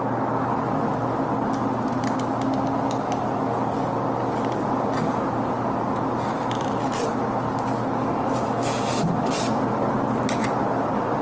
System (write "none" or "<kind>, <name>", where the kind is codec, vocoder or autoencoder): none